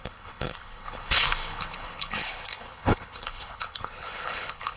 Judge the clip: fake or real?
fake